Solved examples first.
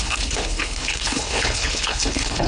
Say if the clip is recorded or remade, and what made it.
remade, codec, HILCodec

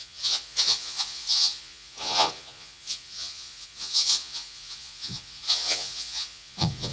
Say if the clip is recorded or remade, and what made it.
remade, vocoder, Vocos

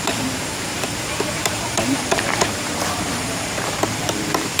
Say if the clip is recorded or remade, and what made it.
remade, vocoder, BigVGAN v2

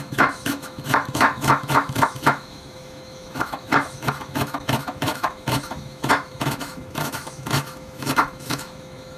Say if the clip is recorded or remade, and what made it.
remade, autoencoder, DAC-VAE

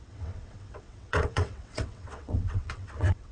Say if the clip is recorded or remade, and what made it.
remade, vocoder, WaveNeXt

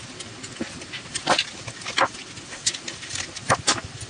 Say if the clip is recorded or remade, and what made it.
recorded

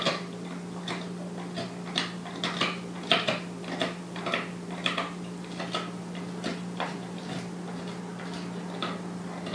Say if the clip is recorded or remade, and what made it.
recorded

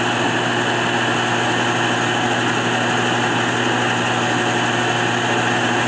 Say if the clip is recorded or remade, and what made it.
recorded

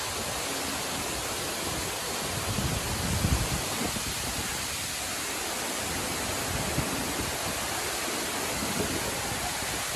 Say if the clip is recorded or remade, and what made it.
recorded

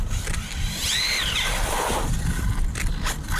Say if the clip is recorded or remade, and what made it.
remade, vocoder, BigVGAN v2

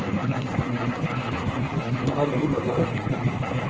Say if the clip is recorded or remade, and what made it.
remade, codec, SNAC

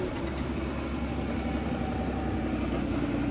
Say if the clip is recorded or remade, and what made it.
recorded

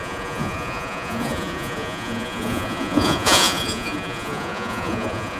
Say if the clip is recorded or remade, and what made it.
remade, vocoder, Vocos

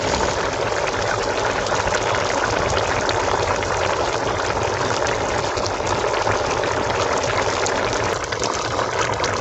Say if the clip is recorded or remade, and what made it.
recorded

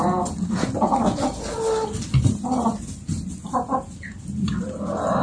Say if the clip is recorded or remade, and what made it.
recorded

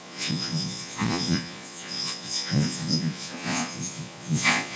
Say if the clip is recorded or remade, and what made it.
remade, vocoder, Vocos